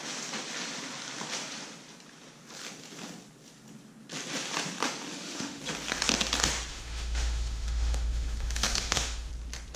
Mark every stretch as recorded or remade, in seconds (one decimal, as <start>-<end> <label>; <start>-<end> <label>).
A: 0.0-5.1 recorded; 5.1-5.6 remade; 5.6-6.7 recorded; 6.7-9.3 remade; 9.3-9.8 recorded

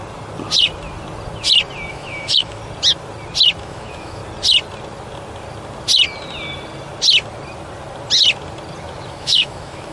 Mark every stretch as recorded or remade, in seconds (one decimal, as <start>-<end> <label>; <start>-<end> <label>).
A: 0.0-1.9 recorded; 1.9-2.6 remade; 2.6-3.6 recorded; 3.6-4.2 remade; 4.2-9.1 recorded; 9.1-9.9 remade

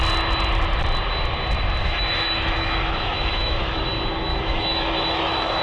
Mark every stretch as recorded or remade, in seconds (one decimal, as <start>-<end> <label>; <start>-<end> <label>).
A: 0.0-1.8 recorded; 1.8-3.8 remade; 3.8-4.3 recorded; 4.3-5.6 remade

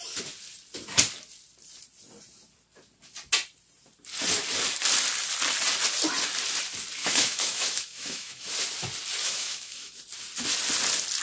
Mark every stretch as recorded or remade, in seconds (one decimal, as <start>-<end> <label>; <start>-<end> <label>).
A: 0.0-7.0 recorded; 7.0-8.5 remade; 8.5-9.2 recorded; 9.2-10.0 remade; 10.0-11.2 recorded

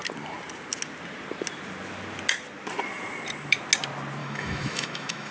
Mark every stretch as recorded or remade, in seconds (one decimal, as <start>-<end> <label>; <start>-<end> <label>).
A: 0.0-4.2 recorded; 4.2-5.3 remade

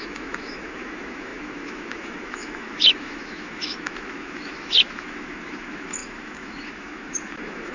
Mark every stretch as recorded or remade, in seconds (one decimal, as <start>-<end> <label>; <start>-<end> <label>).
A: 0.0-7.7 remade